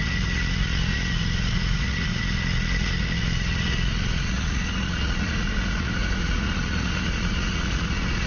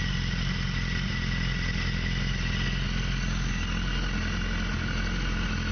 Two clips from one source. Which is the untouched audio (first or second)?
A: second